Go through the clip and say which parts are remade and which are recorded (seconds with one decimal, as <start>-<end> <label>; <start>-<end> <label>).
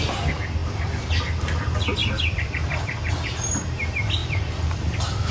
0.0-0.6 recorded; 0.6-1.1 remade; 1.1-2.0 recorded; 2.0-3.1 remade; 3.1-4.2 recorded; 4.2-5.3 remade